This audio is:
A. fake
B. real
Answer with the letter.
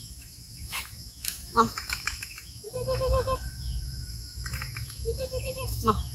A